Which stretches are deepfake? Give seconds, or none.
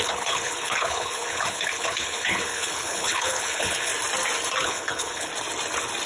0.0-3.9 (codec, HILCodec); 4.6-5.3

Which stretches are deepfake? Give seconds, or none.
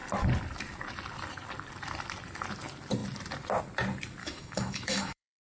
4.2-5.4 (autoencoder, DAC-VAE)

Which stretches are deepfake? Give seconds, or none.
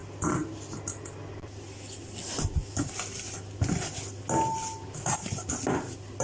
none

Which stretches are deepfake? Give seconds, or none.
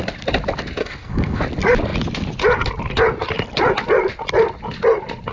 0.8-1.4 (codec, SNAC)